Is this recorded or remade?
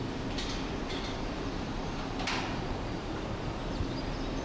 recorded